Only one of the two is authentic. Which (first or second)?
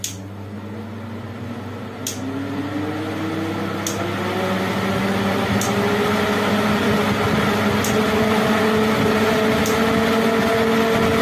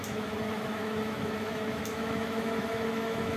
first